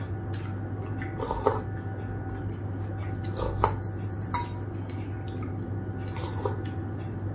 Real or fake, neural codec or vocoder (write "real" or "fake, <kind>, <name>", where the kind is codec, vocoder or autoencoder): real